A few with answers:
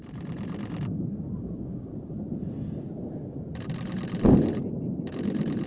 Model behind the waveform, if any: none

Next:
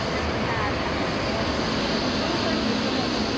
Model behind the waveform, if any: none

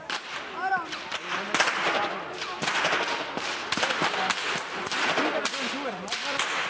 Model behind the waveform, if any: none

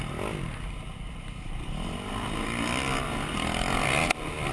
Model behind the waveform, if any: none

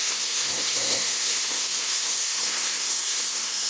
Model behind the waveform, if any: codec, SNAC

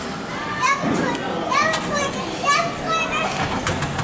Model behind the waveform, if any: none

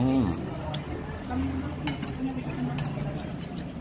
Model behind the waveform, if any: none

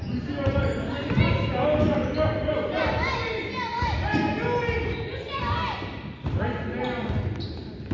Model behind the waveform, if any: none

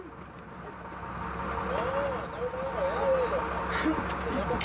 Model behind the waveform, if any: none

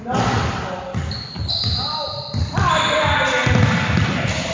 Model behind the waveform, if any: none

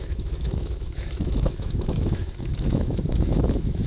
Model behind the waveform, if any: autoencoder, DAC-VAE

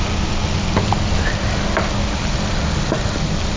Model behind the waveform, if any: none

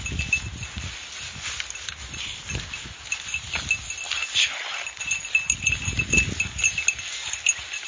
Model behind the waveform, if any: none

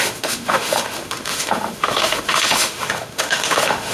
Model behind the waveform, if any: autoencoder, DAC-VAE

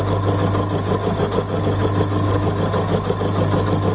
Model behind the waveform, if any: none